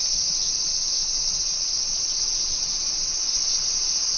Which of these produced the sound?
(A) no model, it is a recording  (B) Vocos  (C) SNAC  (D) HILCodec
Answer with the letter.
A